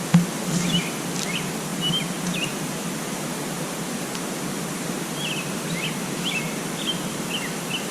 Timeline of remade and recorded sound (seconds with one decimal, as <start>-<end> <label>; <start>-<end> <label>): 0.0-7.9 recorded